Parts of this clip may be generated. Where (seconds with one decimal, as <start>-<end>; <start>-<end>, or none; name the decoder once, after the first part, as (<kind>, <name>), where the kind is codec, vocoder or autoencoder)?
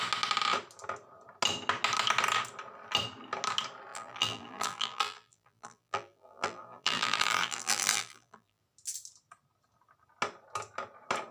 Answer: 3.9-8.6 (vocoder, BigVGAN v2)